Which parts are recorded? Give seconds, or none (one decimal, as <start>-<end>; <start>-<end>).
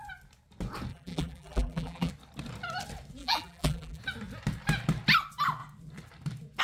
0.0-0.9; 2.1-3.2; 4.0-6.6